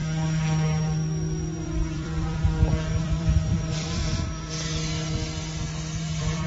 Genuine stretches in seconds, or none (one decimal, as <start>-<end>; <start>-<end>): 0.0-0.8; 2.4-3.0; 4.0-6.0